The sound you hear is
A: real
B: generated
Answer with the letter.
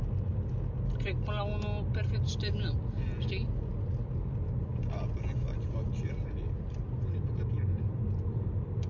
A